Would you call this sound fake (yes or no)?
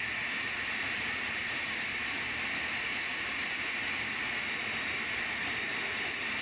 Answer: no